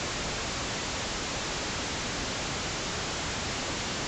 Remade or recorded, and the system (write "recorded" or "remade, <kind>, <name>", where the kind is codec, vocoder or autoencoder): recorded